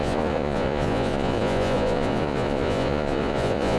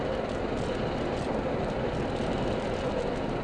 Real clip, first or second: second